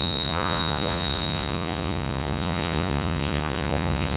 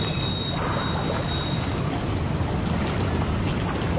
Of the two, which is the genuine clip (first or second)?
second